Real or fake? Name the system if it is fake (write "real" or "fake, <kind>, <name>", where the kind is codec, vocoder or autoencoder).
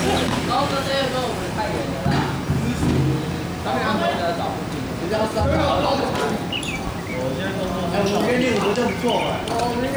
real